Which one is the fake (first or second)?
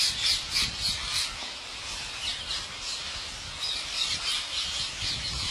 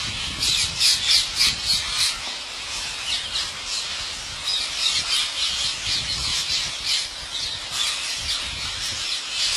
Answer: first